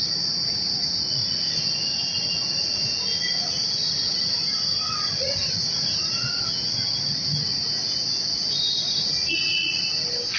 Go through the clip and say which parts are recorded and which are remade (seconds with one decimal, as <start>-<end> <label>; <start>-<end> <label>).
0.0-1.2 recorded; 1.2-6.4 remade; 6.4-9.2 recorded; 9.2-9.9 remade; 9.9-10.4 recorded